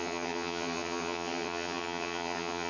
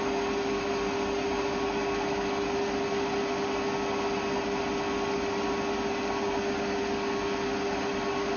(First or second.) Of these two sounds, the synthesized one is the first